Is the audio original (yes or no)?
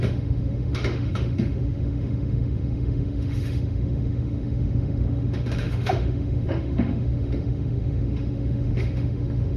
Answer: no